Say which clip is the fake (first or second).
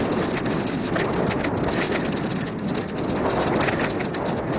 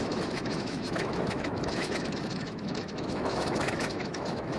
second